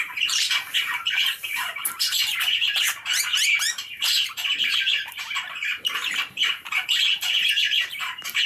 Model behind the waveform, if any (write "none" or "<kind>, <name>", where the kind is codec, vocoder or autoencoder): vocoder, BigVGAN v2